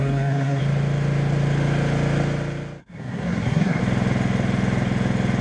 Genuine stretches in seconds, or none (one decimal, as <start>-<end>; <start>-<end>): 0.6-2.8; 3.8-5.4